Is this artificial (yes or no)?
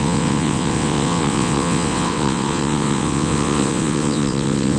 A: yes